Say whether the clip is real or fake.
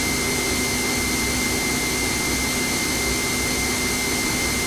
real